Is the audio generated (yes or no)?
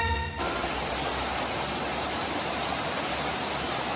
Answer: no